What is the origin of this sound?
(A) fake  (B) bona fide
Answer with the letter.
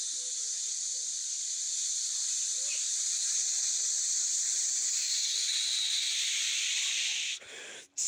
A